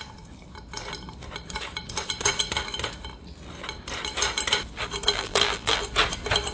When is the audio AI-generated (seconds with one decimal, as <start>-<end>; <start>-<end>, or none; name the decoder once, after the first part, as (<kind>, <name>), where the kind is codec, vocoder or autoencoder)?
5.1-5.8 (vocoder, BigVGAN v2)